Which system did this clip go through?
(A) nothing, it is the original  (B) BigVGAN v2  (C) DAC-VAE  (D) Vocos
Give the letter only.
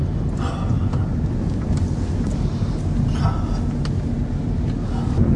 A